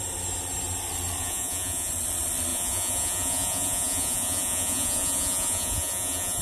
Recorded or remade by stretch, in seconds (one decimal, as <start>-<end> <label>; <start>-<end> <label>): 0.0-1.2 recorded; 1.2-1.9 remade; 1.9-2.5 recorded; 2.5-6.4 remade